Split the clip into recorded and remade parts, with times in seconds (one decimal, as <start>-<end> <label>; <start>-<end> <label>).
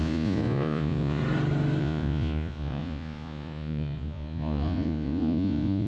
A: 0.0-1.2 remade; 1.2-1.8 recorded; 1.8-5.9 remade